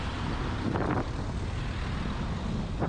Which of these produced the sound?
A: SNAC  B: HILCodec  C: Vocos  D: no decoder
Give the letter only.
D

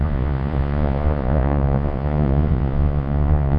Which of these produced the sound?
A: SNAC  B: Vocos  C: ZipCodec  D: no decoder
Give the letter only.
B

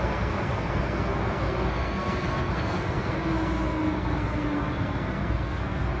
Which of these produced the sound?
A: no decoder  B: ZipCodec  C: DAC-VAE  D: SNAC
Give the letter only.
D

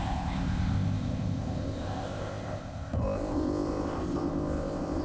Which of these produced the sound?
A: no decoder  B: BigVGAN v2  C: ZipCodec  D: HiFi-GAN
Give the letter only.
C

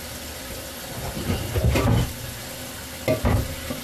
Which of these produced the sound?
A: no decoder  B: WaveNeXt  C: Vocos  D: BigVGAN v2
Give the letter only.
A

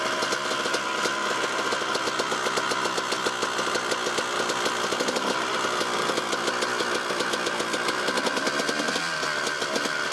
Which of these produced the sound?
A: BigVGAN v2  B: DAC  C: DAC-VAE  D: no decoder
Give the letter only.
A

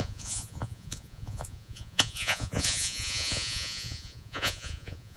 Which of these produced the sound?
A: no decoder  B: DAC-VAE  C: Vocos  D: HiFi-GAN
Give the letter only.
C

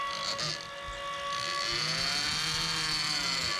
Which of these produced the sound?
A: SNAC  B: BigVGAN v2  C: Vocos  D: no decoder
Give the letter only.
D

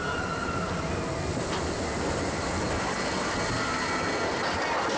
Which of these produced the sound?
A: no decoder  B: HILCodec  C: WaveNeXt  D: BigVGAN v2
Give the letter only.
A